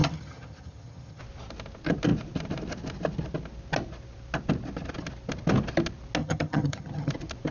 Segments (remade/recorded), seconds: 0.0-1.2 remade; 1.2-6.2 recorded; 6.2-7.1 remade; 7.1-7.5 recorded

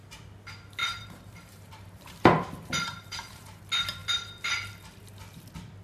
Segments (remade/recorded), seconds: 0.0-0.8 recorded; 0.8-3.6 remade; 3.6-5.8 recorded

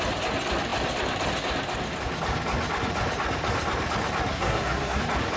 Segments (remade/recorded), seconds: 0.0-4.3 recorded; 4.3-5.0 remade; 5.0-5.4 recorded

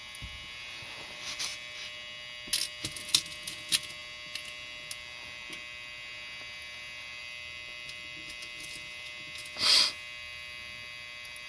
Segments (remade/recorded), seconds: 0.0-11.5 recorded

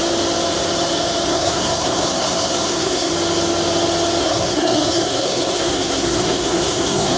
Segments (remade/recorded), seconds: 0.0-1.3 recorded; 1.3-3.1 remade; 3.1-4.2 recorded; 4.2-7.2 remade